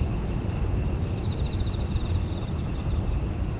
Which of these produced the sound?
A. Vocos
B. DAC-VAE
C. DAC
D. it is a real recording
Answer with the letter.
D